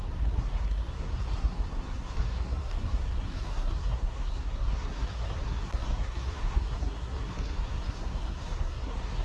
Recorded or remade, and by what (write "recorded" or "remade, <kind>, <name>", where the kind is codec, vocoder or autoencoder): remade, codec, SNAC